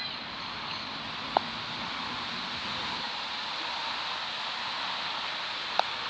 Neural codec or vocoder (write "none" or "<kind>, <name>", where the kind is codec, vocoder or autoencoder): none